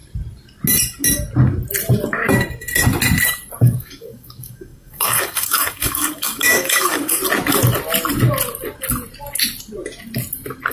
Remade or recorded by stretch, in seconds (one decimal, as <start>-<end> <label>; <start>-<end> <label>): 0.0-3.6 recorded; 3.6-7.2 remade; 7.2-10.7 recorded